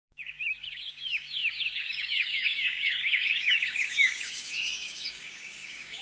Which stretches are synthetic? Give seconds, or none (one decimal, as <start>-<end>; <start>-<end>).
0.0-6.0